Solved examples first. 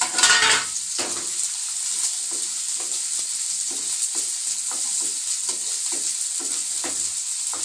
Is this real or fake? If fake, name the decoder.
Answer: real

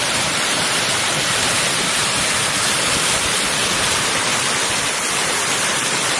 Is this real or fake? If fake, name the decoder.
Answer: fake, vocoder, BigVGAN v2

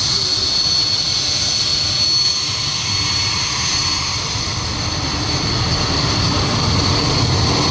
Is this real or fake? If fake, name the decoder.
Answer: real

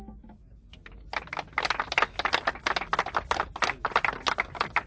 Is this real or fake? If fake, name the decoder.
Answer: real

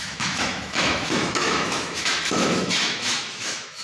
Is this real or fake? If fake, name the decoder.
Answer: fake, autoencoder, DAC-VAE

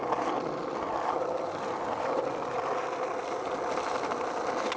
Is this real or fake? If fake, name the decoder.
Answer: real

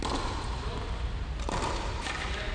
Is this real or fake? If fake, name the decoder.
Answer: real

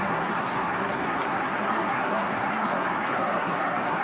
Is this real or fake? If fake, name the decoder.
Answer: fake, codec, SNAC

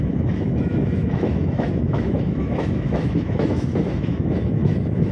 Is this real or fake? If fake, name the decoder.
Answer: fake, autoencoder, DAC-VAE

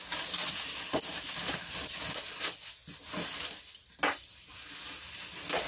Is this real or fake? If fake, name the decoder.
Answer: real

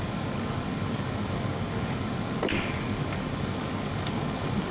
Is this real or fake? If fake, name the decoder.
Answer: fake, codec, DAC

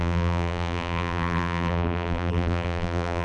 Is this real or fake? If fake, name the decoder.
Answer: fake, vocoder, BigVGAN v2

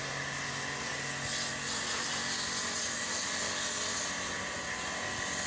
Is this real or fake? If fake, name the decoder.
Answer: real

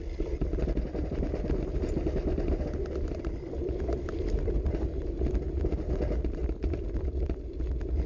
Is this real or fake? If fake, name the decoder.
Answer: real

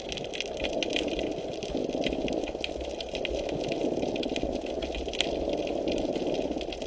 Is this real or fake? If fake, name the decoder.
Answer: real